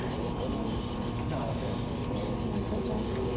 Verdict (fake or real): real